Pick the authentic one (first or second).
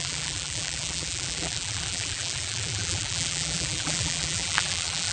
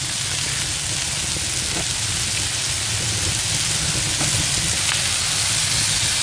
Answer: second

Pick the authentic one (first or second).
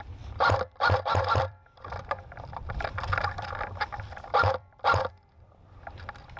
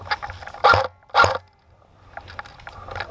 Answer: second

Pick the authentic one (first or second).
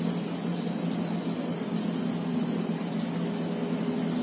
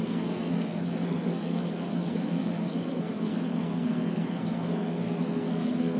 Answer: first